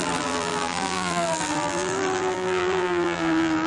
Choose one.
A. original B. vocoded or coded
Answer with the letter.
B